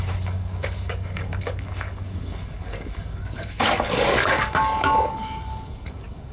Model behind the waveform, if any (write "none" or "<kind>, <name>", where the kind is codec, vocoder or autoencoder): codec, DAC